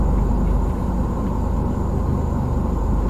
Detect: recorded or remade recorded